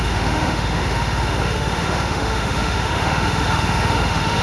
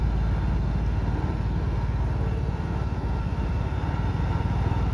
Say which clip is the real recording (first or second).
second